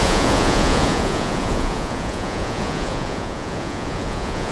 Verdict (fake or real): fake